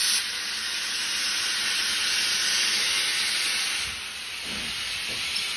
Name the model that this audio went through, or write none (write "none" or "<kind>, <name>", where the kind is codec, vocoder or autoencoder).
none